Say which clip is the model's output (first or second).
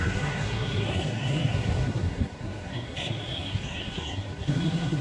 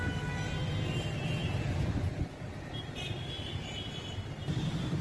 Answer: first